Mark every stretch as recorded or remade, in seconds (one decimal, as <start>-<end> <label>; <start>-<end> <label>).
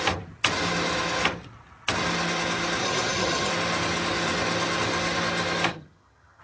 0.0-2.8 recorded; 2.8-3.5 remade; 3.5-5.7 recorded; 5.7-6.4 remade